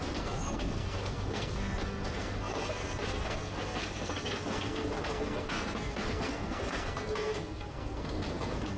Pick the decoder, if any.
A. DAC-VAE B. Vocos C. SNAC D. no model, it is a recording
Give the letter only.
C